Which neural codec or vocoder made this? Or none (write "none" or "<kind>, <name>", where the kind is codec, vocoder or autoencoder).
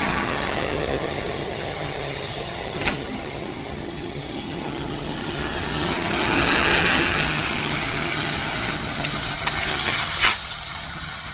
vocoder, HiFi-GAN